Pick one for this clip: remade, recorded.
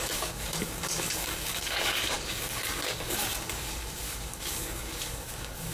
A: remade